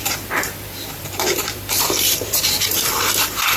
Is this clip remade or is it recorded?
remade